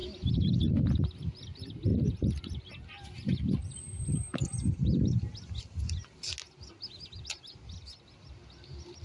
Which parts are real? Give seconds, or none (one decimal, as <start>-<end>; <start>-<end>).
0.0-9.0